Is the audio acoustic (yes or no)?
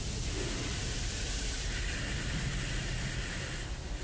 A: no